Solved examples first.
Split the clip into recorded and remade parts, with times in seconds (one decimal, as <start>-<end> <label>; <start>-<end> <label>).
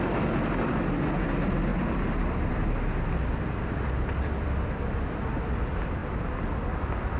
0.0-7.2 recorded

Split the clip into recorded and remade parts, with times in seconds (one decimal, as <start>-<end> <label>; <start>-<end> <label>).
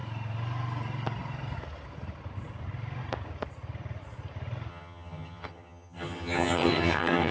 0.0-4.7 recorded; 4.7-7.3 remade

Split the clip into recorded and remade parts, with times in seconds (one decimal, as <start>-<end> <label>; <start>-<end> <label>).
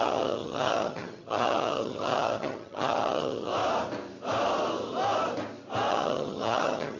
0.0-3.5 remade; 3.5-5.9 recorded; 5.9-7.0 remade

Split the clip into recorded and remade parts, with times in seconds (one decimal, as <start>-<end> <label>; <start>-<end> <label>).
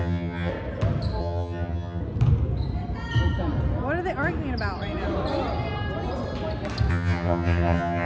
0.0-0.5 remade; 0.5-1.2 recorded; 1.2-2.0 remade; 2.0-6.9 recorded; 6.9-8.1 remade